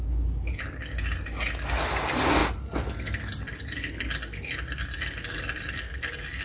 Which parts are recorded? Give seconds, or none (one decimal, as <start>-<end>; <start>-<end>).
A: 0.0-6.4